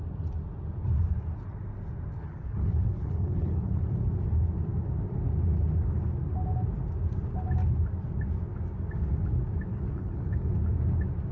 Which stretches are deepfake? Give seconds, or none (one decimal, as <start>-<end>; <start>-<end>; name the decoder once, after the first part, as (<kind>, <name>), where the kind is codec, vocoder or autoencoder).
2.2-3.9 (codec, HILCodec); 9.7-10.5